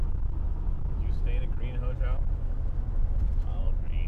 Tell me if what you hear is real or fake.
real